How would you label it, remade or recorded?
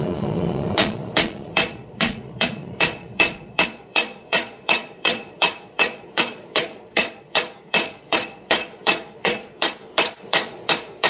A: remade